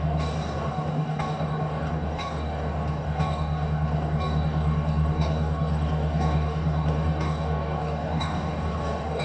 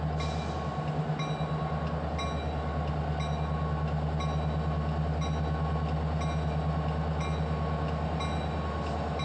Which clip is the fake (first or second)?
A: first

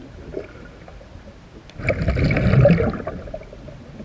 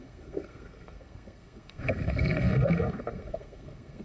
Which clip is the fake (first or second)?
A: second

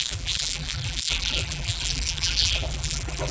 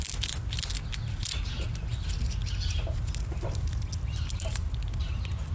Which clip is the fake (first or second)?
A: first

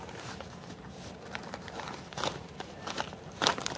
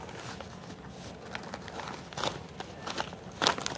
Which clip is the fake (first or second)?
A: first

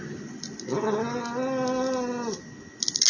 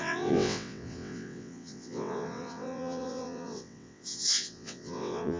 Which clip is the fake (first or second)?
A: second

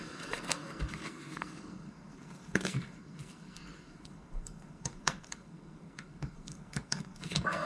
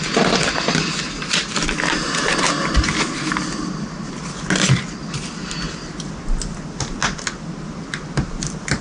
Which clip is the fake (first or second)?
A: first